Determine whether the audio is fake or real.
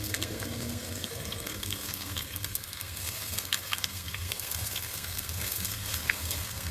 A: fake